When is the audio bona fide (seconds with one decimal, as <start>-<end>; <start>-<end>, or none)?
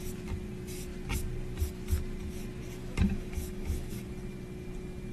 0.0-2.8; 4.1-5.1